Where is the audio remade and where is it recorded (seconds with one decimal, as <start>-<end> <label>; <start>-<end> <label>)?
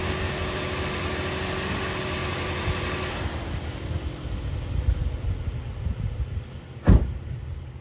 0.0-7.8 recorded